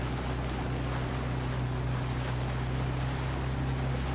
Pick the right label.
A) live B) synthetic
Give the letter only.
A